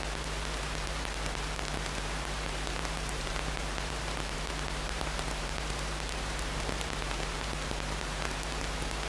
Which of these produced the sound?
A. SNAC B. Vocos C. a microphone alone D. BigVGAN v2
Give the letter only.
D